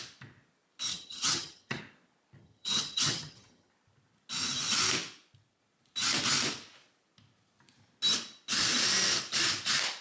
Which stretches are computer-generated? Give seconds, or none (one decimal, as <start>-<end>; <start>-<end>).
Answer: 0.9-1.8; 2.4-3.7